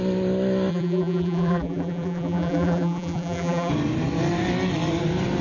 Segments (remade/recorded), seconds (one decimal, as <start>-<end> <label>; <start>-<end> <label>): 0.0-0.7 recorded; 0.7-3.7 remade; 3.7-5.4 recorded